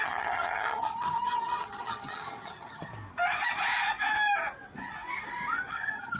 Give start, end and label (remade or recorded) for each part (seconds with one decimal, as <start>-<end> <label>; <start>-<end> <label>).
0.0-2.9 remade; 2.9-5.7 recorded; 5.7-6.2 remade